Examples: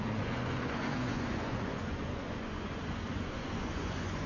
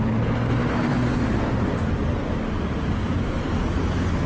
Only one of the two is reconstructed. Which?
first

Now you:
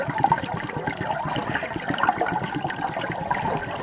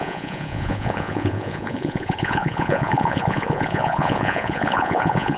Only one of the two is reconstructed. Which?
second